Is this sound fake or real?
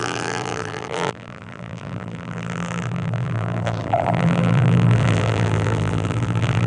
fake